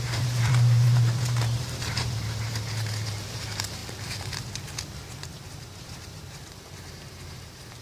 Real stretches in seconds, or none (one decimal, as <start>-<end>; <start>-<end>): 3.8-5.3